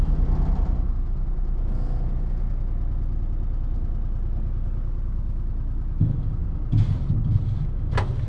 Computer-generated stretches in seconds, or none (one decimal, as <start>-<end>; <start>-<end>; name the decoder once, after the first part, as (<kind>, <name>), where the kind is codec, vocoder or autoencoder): none